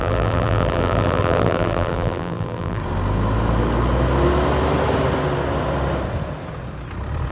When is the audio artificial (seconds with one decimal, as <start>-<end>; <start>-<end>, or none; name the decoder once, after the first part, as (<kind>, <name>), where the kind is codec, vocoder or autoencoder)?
0.0-2.8 (vocoder, BigVGAN v2)